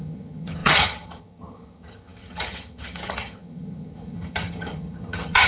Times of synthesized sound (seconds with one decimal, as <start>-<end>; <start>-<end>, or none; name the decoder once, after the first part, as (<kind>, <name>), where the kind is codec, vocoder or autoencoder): 0.0-5.5 (vocoder, HiFi-GAN)